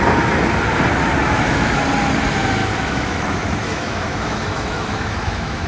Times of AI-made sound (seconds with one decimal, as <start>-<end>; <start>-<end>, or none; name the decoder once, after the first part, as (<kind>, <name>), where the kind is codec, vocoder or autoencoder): 1.2-1.8 (autoencoder, DAC-VAE); 2.6-5.7